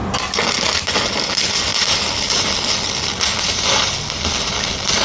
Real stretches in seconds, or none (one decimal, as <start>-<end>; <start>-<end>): 0.0-5.0